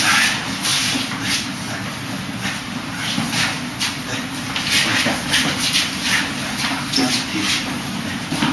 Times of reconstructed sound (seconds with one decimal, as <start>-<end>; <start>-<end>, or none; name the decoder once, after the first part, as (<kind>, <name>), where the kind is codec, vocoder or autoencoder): 0.7-1.6 (vocoder, BigVGAN v2)